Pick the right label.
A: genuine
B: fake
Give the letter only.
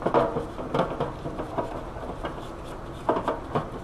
A